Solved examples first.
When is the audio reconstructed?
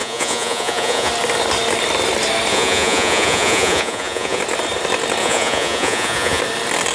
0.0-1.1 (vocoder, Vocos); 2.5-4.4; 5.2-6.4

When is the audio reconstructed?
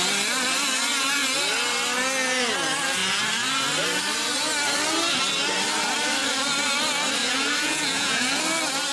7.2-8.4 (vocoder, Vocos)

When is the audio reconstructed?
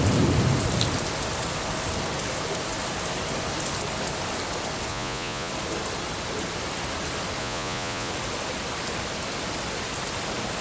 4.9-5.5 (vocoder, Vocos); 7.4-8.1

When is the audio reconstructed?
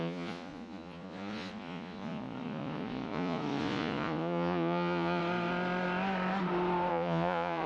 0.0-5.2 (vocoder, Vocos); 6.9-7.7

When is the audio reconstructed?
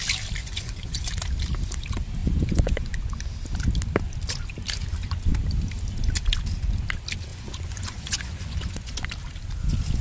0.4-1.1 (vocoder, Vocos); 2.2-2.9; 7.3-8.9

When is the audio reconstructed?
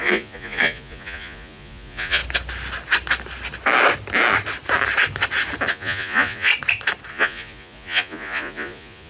0.0-2.2 (vocoder, Vocos); 5.7-6.5; 7.1-9.1